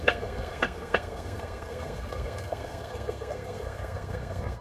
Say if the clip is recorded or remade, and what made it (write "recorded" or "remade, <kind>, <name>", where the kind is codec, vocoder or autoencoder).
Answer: remade, codec, SNAC